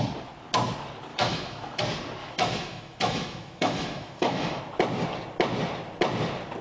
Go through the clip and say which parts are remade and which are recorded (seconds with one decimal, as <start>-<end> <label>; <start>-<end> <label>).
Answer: 0.0-1.1 recorded; 1.1-1.8 remade; 1.8-2.2 recorded; 2.2-4.6 remade; 4.6-6.6 recorded